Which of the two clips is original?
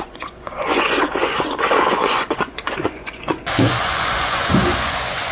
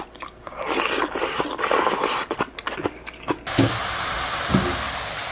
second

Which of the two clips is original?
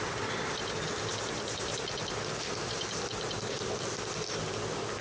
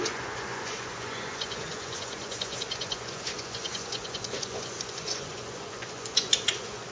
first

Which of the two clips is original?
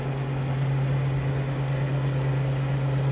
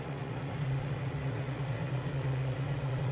first